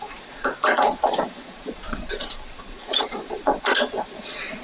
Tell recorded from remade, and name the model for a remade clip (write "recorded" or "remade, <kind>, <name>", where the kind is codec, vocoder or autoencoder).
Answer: remade, vocoder, Vocos